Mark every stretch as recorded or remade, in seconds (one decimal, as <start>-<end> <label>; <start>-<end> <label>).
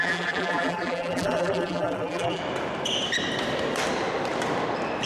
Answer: 0.0-2.4 remade; 2.4-5.1 recorded